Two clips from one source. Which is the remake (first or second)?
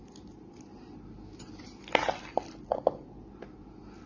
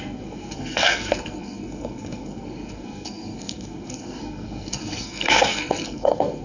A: second